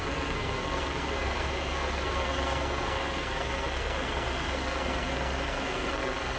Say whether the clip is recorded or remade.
remade